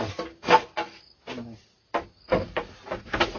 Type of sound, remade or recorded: recorded